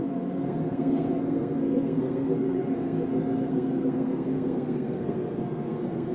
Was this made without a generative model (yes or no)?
no